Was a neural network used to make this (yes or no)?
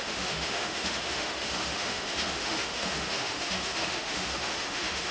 yes